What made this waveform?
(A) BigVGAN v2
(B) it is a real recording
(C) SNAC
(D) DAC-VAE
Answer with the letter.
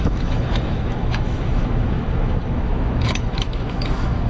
D